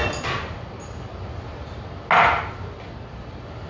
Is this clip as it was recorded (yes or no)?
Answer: yes